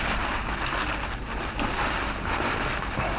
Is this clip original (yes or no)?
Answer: yes